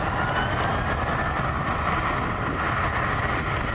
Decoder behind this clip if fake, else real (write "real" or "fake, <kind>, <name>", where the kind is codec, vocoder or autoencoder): real